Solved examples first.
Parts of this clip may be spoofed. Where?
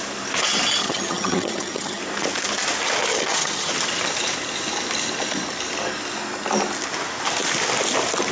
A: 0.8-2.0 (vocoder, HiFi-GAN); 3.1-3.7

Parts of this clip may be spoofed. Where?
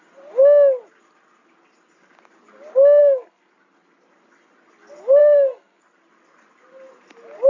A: 3.0-3.5 (codec, SNAC); 5.2-5.8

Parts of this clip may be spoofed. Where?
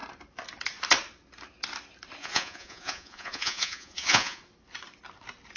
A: 2.2-4.4 (vocoder, Vocos)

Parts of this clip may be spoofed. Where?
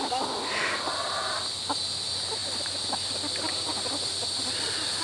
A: none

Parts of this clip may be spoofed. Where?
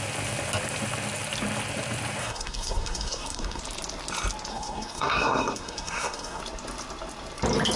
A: 2.2-3.6 (codec, SNAC); 4.5-6.4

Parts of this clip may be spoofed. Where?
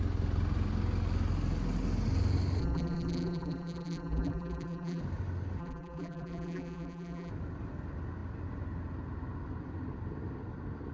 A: 2.6-5.0 (vocoder, BigVGAN v2); 5.6-7.3